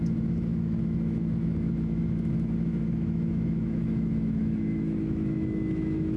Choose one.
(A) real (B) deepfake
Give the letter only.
B